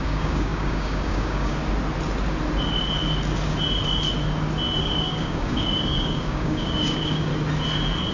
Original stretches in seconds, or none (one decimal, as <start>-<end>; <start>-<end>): 1.6-4.8; 7.3-8.1